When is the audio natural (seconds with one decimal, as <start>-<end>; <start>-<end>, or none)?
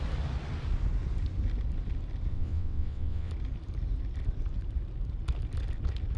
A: 0.0-2.3; 3.3-6.2